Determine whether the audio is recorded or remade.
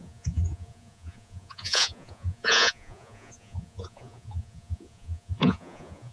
remade